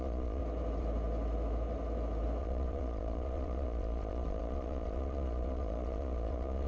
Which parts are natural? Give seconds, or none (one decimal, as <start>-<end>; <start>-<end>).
0.4-2.4